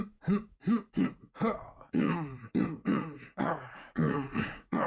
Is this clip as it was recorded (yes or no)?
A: no